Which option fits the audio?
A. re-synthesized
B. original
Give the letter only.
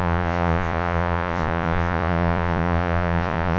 A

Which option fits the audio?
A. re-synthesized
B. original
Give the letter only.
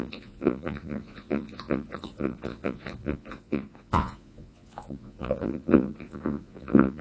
A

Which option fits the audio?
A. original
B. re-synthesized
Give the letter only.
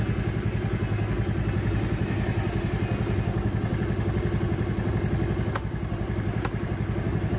A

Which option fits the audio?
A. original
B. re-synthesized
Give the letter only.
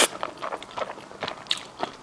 A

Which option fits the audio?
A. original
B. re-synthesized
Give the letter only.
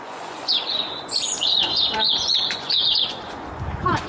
B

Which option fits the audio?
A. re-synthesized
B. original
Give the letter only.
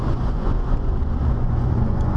A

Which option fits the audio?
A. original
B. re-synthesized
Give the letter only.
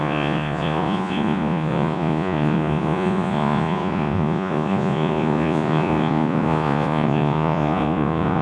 B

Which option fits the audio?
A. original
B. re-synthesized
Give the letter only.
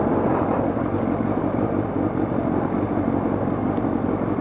A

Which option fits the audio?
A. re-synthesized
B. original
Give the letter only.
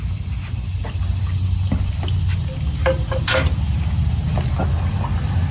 B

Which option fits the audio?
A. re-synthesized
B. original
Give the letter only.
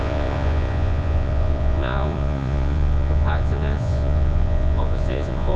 A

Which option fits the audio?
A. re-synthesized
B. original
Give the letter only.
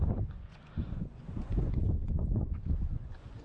A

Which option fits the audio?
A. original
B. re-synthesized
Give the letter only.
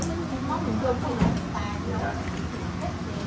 A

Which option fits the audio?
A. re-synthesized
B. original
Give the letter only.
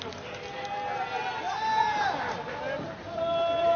B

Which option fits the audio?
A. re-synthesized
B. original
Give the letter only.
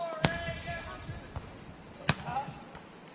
B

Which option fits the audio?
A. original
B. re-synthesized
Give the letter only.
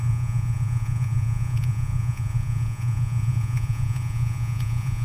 B